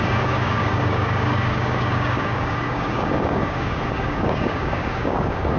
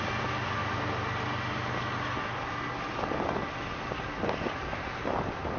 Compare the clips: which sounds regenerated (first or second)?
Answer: first